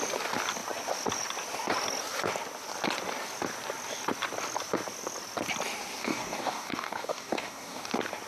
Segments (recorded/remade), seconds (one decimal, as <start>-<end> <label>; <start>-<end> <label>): 0.0-6.0 recorded; 6.0-7.9 remade; 7.9-8.3 recorded